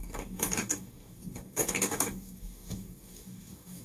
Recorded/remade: remade